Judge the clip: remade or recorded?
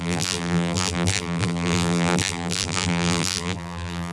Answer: remade